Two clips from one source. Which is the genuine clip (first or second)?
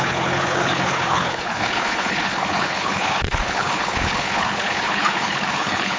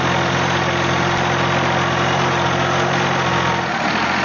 second